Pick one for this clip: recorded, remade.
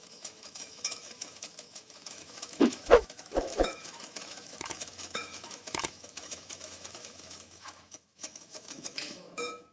remade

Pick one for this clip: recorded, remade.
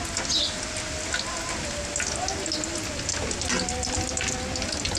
recorded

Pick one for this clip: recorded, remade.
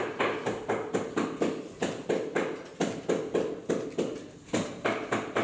recorded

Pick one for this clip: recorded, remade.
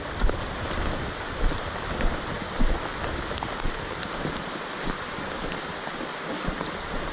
remade